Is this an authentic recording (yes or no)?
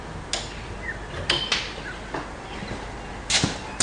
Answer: yes